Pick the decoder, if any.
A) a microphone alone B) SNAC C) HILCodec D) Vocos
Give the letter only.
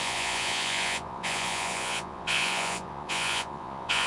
D